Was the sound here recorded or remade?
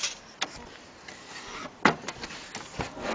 recorded